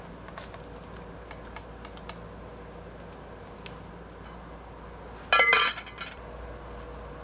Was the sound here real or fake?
real